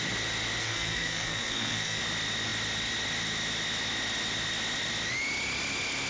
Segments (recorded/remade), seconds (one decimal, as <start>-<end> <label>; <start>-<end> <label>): 0.0-0.6 recorded; 0.6-2.0 remade; 2.0-6.1 recorded